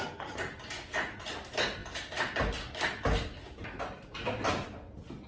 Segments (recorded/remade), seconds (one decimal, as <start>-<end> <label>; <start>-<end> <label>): 0.0-5.3 recorded